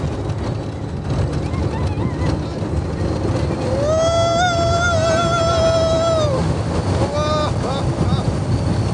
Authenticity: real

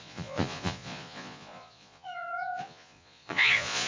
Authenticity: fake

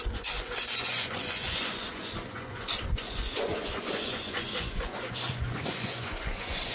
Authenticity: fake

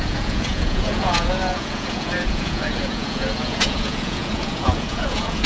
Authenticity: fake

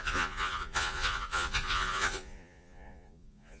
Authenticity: fake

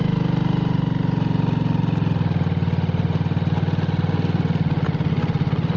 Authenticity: real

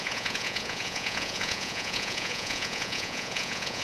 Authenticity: fake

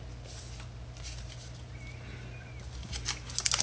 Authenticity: real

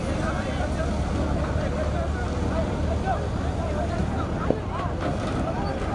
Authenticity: real